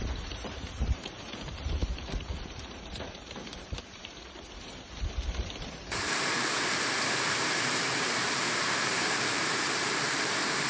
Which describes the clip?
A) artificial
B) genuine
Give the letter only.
A